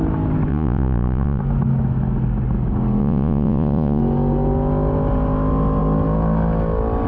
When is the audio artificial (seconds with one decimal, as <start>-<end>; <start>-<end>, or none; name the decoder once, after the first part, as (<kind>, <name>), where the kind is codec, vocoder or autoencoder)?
0.5-1.4 (vocoder, Vocos); 3.0-4.0